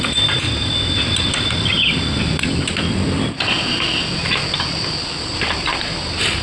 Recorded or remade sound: recorded